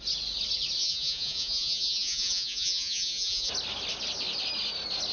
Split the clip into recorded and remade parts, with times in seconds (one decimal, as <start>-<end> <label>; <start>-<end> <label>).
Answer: 0.0-0.8 recorded; 0.8-3.5 remade; 3.5-5.1 recorded